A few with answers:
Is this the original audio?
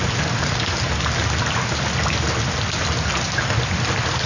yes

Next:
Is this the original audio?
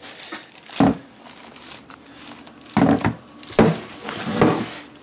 yes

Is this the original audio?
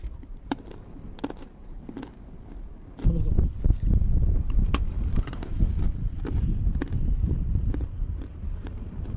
no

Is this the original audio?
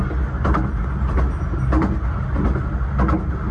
yes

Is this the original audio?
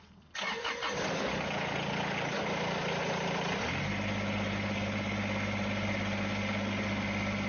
yes